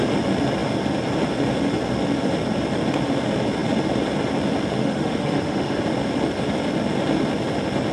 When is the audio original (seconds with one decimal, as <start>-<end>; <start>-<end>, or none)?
0.0-4.8; 5.8-7.9